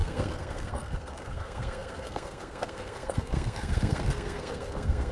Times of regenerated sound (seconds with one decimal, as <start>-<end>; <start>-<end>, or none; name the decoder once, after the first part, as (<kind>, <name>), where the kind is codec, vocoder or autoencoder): 0.0-5.1 (codec, SNAC)